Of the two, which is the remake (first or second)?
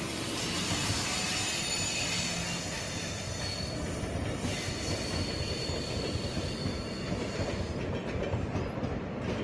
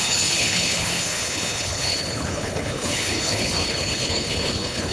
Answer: second